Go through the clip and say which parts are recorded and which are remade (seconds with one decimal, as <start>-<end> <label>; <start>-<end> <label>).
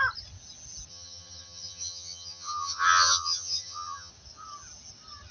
0.0-0.9 recorded; 0.9-4.1 remade; 4.1-5.3 recorded